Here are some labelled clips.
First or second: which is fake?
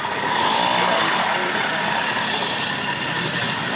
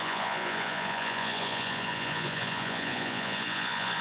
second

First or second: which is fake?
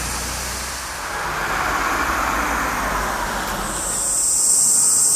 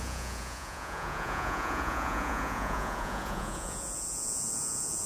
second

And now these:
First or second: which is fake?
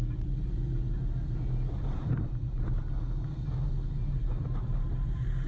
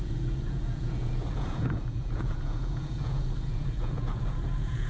second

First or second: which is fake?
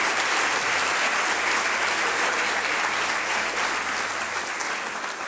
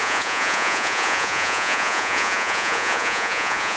second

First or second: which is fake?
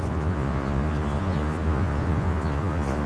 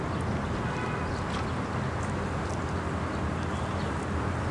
first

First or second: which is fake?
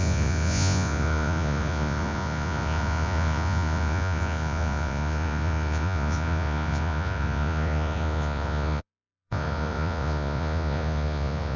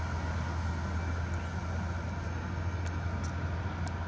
first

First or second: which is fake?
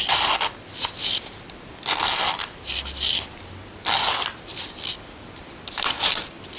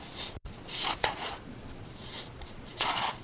second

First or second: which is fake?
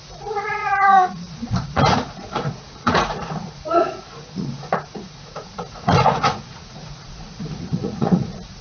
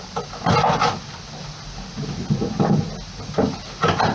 first